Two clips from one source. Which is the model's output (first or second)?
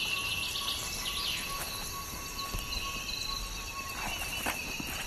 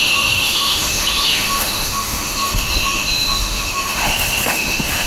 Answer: second